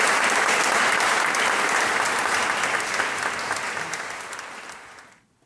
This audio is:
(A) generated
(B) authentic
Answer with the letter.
B